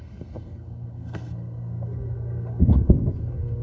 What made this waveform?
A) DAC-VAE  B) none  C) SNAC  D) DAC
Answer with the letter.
C